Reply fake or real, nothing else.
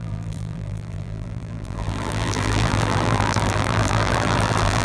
fake